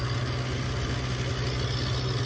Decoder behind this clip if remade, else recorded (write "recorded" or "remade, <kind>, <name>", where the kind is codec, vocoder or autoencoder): recorded